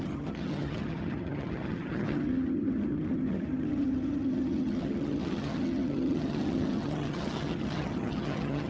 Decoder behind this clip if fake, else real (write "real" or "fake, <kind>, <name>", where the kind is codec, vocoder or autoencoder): fake, vocoder, HiFi-GAN